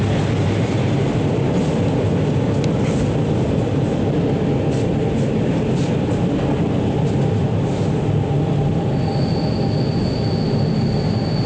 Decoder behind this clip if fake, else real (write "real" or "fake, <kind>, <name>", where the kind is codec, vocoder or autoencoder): real